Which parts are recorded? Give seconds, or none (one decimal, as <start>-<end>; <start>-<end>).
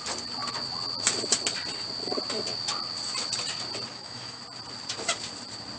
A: 0.0-3.9; 4.4-5.8